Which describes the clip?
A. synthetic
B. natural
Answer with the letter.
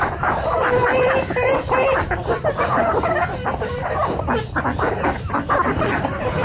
B